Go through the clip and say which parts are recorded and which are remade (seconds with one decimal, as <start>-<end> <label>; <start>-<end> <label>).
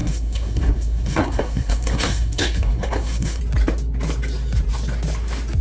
0.0-3.4 remade; 3.4-5.6 recorded